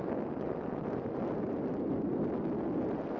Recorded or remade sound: recorded